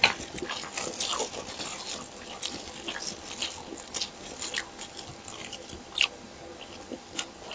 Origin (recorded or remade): recorded